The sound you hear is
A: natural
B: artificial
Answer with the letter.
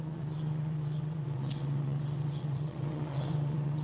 B